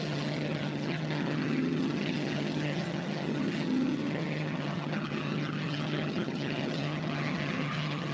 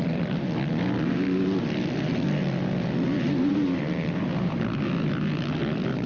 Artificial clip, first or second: first